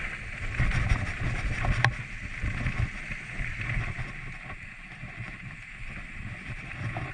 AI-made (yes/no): no